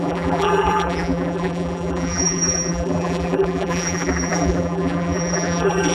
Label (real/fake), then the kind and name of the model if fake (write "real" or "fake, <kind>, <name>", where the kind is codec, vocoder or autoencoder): fake, vocoder, BigVGAN v2